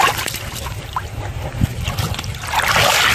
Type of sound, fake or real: real